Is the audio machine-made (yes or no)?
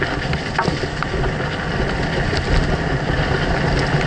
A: no